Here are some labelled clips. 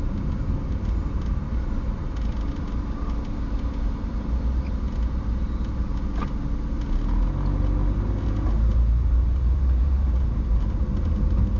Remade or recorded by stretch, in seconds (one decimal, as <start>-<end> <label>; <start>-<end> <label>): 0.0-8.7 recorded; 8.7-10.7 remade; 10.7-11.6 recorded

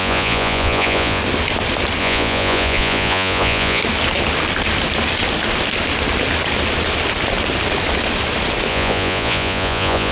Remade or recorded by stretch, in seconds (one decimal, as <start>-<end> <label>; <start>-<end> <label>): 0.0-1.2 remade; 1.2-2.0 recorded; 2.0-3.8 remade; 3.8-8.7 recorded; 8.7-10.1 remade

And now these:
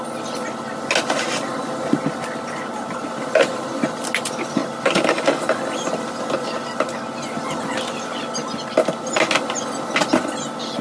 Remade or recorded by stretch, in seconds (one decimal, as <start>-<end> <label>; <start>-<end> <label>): 0.0-10.8 recorded